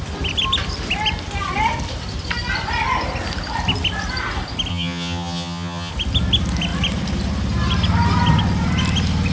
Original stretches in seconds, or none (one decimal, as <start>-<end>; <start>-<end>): 0.0-4.7; 5.9-9.3